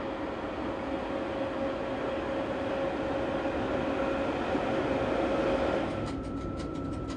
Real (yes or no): yes